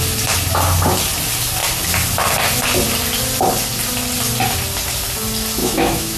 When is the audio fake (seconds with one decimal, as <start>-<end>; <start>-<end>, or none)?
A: 5.6-6.2